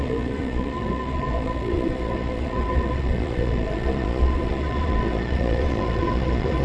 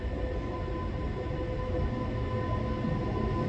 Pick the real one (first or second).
second